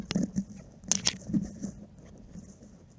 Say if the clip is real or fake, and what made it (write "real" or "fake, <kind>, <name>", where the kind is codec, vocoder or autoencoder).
real